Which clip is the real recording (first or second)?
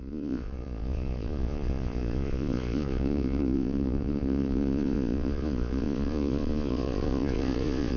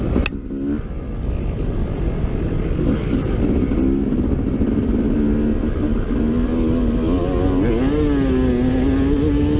second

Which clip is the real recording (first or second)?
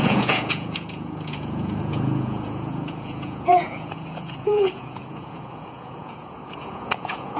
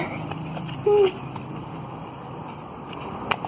second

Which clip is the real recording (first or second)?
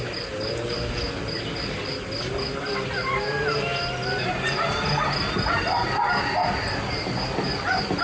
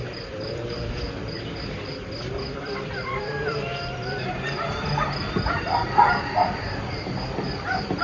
first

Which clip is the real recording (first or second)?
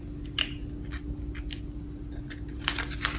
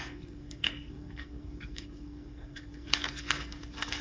first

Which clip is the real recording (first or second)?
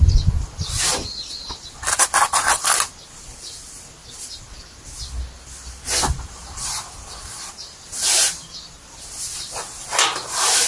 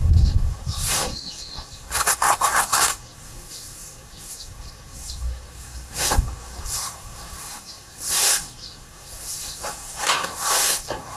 first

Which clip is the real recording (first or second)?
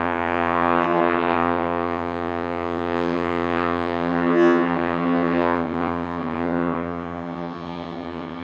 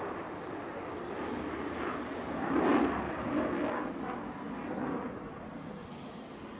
second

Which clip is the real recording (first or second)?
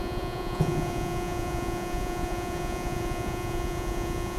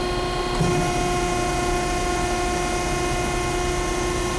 second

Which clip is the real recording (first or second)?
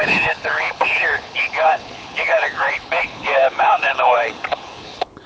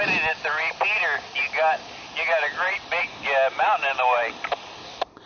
second